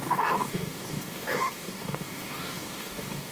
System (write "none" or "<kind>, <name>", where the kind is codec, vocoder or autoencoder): codec, DAC